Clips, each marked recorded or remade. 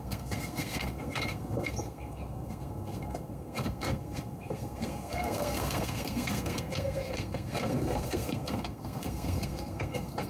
remade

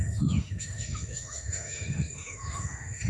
remade